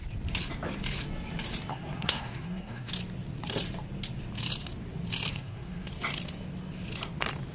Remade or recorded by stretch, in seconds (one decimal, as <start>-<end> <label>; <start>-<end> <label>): 0.0-1.7 recorded; 1.7-2.9 remade; 2.9-5.3 recorded; 5.3-5.9 remade; 5.9-7.5 recorded